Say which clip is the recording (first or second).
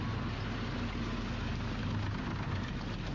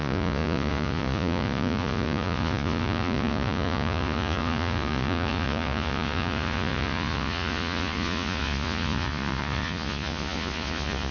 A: first